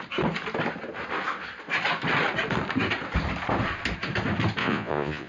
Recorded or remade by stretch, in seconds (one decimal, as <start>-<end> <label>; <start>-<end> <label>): 0.0-4.6 recorded; 4.6-5.3 remade